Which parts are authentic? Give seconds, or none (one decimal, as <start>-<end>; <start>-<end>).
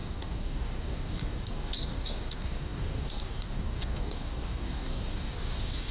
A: none